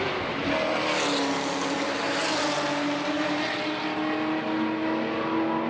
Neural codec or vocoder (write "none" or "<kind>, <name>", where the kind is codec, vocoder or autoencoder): none